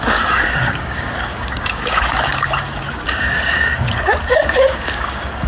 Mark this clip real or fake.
fake